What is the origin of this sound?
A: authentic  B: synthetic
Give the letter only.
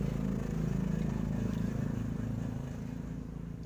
A